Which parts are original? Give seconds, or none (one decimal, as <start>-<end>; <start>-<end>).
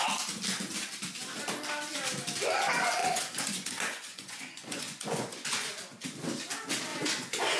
0.0-3.0; 5.7-6.9